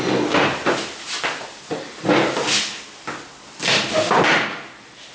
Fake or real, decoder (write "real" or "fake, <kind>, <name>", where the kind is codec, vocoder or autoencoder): real